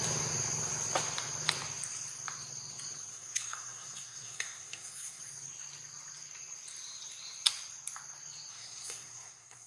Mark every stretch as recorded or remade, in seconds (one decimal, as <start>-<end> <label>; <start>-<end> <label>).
0.0-3.1 recorded; 3.1-5.2 remade; 5.2-8.5 recorded; 8.5-9.7 remade